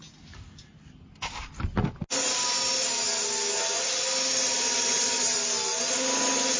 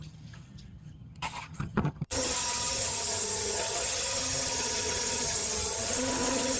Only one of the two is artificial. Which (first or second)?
second